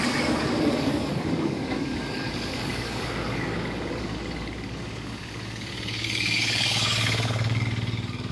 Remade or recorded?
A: remade